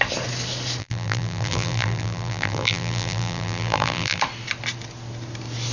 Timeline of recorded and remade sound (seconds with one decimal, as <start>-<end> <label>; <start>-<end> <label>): 0.0-0.8 recorded; 0.8-4.2 remade; 4.2-5.7 recorded

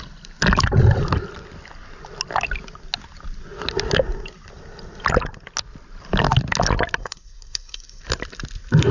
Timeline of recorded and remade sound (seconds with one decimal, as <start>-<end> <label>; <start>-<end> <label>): 0.0-7.0 recorded; 7.0-8.0 remade; 8.0-8.9 recorded

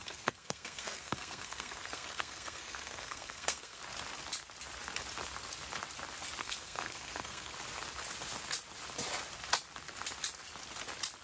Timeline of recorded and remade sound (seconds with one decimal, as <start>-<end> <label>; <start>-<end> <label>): 0.0-3.8 remade; 3.8-6.4 recorded; 6.4-7.5 remade; 7.5-11.2 recorded

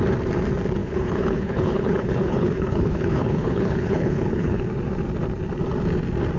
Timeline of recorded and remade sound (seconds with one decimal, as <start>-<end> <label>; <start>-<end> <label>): 0.0-0.8 recorded; 0.8-4.6 remade; 4.6-6.4 recorded

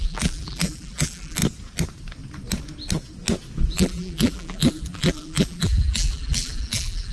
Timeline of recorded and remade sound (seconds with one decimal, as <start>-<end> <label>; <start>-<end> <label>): 0.0-1.4 remade; 1.4-3.7 recorded; 3.7-7.1 remade